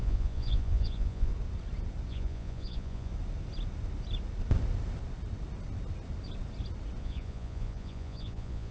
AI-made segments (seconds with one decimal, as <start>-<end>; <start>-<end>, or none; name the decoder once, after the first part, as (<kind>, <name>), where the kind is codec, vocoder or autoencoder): 0.0-1.3 (vocoder, Vocos); 2.1-3.1; 7.0-8.7